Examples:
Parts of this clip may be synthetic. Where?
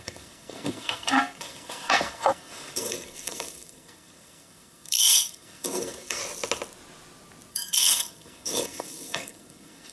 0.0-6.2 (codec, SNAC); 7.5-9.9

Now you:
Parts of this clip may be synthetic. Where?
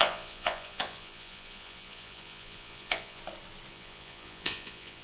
0.0-3.2 (vocoder, Vocos); 3.7-5.0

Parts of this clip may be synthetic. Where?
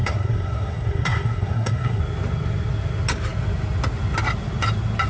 0.0-2.0 (codec, SNAC)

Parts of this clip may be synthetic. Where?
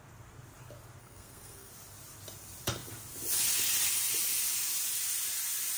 1.0-1.7 (codec, SNAC)